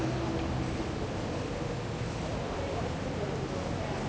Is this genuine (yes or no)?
yes